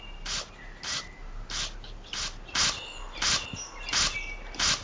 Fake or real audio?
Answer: real